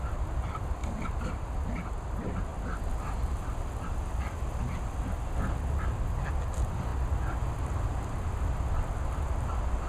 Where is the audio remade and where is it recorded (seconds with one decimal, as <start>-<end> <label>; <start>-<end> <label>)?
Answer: 0.0-9.9 recorded